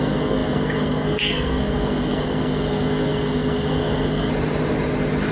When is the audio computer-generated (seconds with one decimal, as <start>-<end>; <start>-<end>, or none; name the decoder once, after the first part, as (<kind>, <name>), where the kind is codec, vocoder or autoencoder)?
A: 0.0-4.3 (codec, SNAC)